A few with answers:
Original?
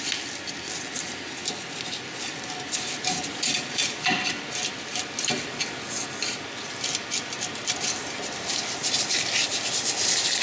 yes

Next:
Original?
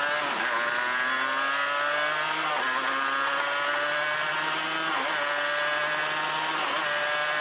yes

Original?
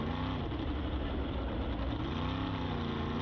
yes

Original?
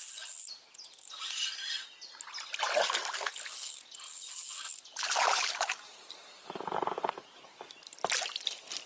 yes